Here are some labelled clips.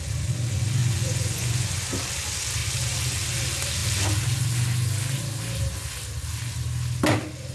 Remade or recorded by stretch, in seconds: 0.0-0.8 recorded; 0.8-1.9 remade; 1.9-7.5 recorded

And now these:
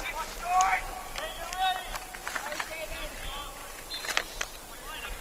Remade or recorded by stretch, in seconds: 0.0-1.2 remade; 1.2-2.1 recorded; 2.1-3.6 remade; 3.6-4.4 recorded; 4.4-5.2 remade